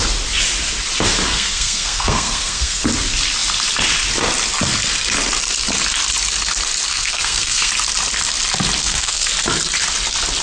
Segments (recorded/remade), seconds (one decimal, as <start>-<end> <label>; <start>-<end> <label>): 0.0-1.3 recorded; 1.3-2.8 remade; 2.8-6.9 recorded; 6.9-7.7 remade; 7.7-8.8 recorded; 8.8-9.3 remade; 9.3-10.4 recorded